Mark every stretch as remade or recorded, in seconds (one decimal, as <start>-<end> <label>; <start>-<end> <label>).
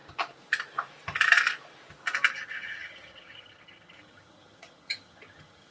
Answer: 0.0-2.3 recorded; 2.3-5.7 remade